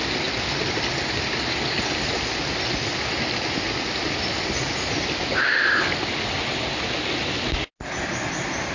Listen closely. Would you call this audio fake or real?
real